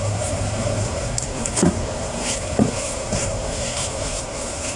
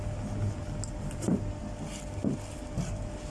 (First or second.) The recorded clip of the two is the second